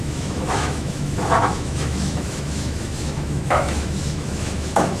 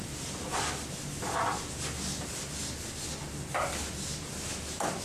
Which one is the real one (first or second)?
second